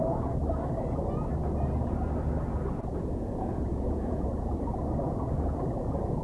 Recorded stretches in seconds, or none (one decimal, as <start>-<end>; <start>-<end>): 0.4-2.9; 4.3-5.0